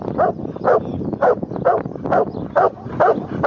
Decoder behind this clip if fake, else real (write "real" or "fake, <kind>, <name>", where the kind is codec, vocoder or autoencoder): real